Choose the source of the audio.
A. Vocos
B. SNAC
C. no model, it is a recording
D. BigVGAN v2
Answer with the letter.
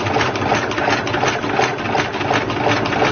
C